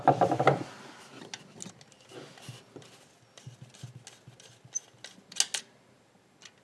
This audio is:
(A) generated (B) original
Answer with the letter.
B